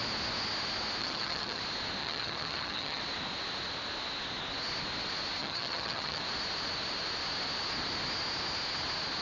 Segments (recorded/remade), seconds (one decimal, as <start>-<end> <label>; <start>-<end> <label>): 0.0-1.0 recorded; 1.0-1.6 remade; 1.6-2.0 recorded; 2.0-3.0 remade; 3.0-5.4 recorded; 5.4-6.2 remade; 6.2-9.2 recorded